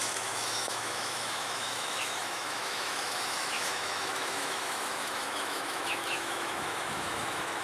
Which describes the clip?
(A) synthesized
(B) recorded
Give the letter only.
A